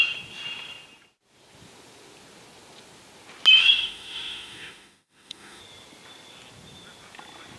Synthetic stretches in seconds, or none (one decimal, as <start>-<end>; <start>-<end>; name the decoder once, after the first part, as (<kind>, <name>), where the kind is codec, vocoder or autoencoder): 3.6-5.6 (autoencoder, DAC-VAE)